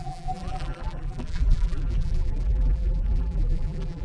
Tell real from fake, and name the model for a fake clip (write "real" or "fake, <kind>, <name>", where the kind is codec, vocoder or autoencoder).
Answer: fake, vocoder, BigVGAN v2